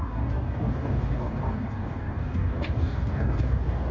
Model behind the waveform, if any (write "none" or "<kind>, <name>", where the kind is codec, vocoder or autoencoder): codec, DAC